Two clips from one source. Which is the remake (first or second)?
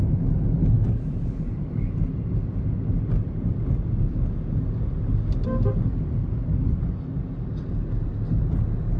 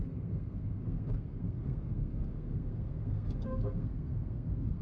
second